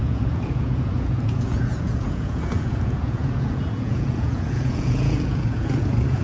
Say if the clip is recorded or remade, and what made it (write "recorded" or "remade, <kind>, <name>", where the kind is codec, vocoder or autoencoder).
remade, vocoder, Vocos